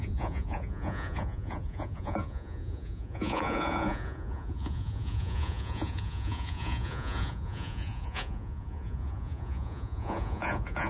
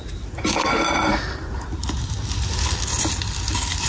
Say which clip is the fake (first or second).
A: first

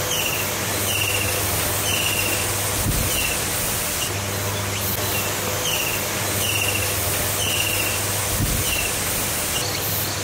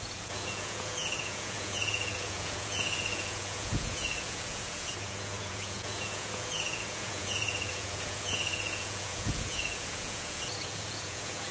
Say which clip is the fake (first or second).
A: second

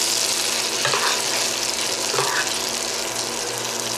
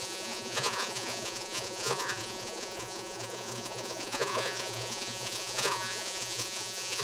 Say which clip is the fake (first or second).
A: second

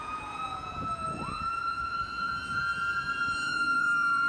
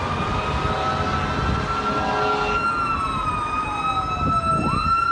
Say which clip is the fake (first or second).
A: first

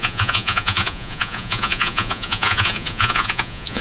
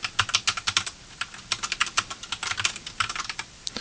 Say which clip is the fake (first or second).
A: first